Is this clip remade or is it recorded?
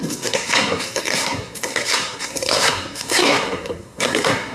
remade